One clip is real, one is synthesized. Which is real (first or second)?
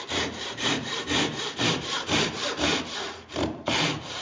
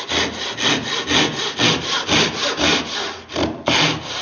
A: second